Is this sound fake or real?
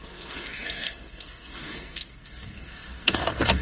fake